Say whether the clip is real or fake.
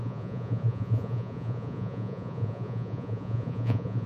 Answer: fake